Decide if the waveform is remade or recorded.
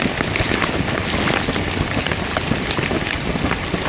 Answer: recorded